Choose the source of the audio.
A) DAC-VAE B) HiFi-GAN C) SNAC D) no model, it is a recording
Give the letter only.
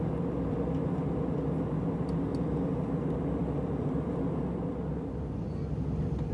D